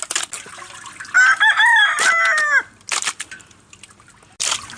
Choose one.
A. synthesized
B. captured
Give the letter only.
B